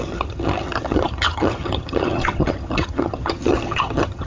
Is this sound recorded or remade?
remade